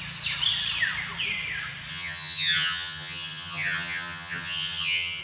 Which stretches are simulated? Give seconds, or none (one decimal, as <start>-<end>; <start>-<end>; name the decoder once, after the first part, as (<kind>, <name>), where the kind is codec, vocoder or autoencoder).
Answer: 1.9-5.2 (vocoder, HiFi-GAN)